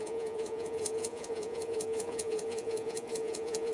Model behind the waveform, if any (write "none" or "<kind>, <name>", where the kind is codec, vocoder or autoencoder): vocoder, Vocos